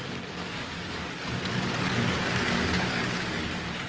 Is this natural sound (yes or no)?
no